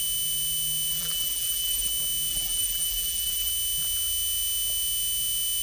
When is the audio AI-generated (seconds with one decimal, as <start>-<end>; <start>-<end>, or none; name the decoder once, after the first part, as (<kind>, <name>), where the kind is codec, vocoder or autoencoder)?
0.9-1.9 (vocoder, BigVGAN v2); 2.3-3.5